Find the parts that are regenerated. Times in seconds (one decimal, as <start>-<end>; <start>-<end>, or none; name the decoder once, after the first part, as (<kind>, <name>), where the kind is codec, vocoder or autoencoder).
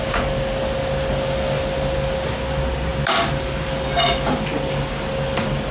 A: 2.9-5.7 (vocoder, BigVGAN v2)